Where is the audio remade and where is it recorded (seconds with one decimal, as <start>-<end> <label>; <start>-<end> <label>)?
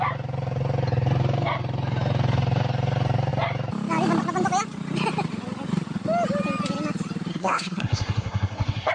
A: 0.0-7.3 recorded; 7.3-8.9 remade